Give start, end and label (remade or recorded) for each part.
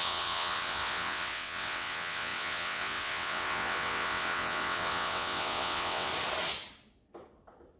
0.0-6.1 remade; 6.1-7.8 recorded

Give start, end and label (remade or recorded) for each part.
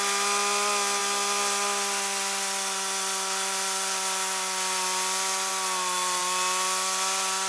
0.0-7.5 recorded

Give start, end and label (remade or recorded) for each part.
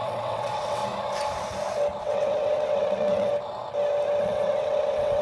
0.0-0.8 remade; 0.8-2.0 recorded; 2.0-3.3 remade; 3.3-4.2 recorded; 4.2-5.2 remade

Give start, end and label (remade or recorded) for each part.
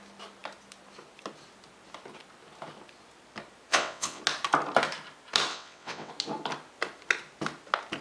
0.0-3.7 recorded; 3.7-4.2 remade; 4.2-5.5 recorded; 5.5-6.1 remade; 6.1-8.0 recorded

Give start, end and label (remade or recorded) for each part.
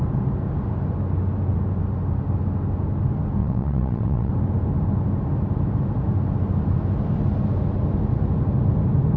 0.0-3.4 recorded; 3.4-4.3 remade; 4.3-9.2 recorded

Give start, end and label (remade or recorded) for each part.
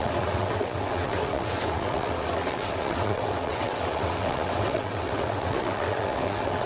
0.0-6.7 remade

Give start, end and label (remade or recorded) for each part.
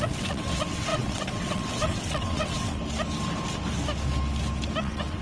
0.0-2.8 remade; 2.8-4.8 recorded; 4.8-5.2 remade